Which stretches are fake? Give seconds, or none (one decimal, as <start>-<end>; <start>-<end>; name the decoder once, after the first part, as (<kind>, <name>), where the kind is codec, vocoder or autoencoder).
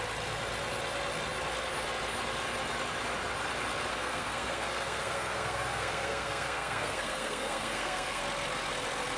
3.9-8.2 (codec, SNAC)